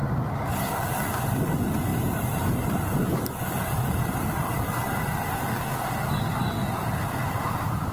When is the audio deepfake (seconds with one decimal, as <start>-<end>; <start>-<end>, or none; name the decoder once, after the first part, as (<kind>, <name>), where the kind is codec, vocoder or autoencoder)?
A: 0.0-0.6 (vocoder, BigVGAN v2); 1.9-4.5